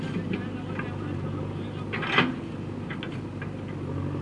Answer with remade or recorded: recorded